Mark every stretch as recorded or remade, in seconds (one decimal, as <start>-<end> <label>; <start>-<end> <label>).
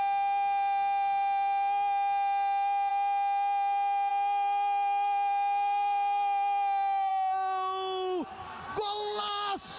0.0-9.8 recorded